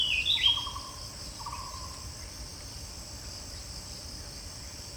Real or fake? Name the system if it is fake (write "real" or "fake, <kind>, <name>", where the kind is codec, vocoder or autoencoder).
fake, vocoder, BigVGAN v2